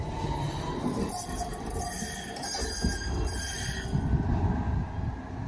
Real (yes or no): yes